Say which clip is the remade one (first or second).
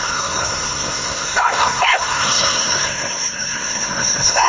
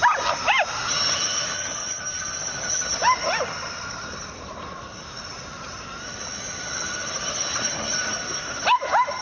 first